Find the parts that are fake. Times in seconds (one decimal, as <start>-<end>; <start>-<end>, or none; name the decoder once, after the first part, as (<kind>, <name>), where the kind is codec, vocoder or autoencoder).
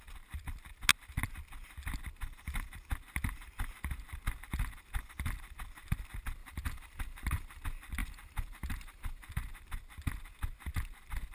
6.4-7.6 (vocoder, BigVGAN v2); 8.0-9.3